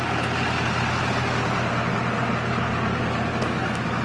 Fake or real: real